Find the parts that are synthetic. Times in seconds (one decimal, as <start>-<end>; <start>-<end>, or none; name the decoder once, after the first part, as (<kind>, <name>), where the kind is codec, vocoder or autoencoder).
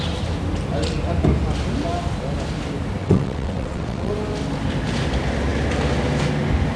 3.0-4.1 (vocoder, WaveNeXt)